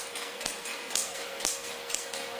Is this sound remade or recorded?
remade